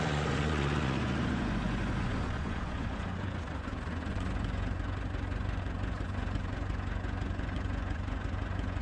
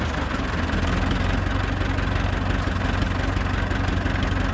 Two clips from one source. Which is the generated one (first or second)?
first